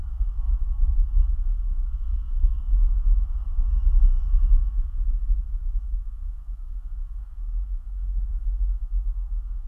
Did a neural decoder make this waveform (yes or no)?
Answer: yes